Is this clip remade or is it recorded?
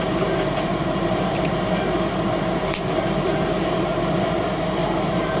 remade